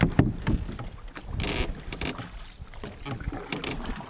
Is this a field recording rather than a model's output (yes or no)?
yes